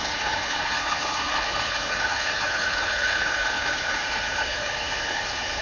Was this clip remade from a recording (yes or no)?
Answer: yes